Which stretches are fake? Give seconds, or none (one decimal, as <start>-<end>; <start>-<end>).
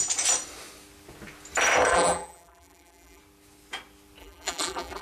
1.9-3.2; 4.2-5.0